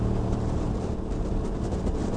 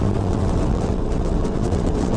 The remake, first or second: second